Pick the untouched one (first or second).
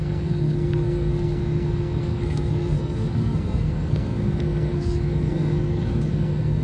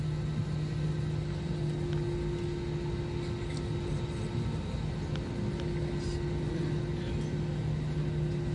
second